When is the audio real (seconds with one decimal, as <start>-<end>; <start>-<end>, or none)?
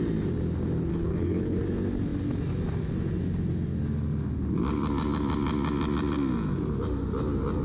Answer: 0.0-0.9; 1.6-7.6